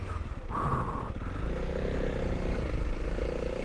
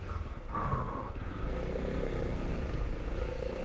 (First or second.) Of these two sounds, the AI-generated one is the second